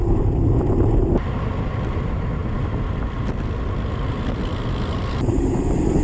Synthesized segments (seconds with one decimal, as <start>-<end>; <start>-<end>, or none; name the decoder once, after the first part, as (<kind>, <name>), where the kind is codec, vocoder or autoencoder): none